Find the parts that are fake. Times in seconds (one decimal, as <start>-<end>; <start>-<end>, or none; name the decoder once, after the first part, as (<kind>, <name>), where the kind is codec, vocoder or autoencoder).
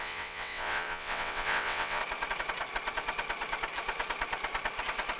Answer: 0.0-2.0 (vocoder, WaveNeXt)